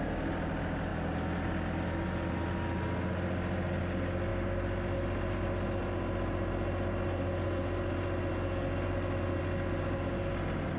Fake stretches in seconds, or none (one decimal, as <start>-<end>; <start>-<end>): none